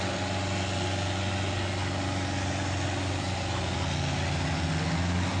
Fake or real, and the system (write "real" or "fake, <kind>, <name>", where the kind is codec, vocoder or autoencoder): real